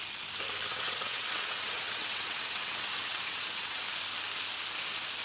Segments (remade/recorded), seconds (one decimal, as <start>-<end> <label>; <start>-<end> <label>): 0.0-0.7 recorded; 0.7-3.8 remade; 3.8-5.2 recorded